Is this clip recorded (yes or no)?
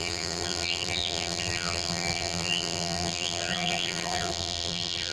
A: no